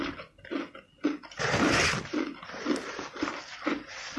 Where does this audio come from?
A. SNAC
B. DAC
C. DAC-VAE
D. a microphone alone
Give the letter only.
D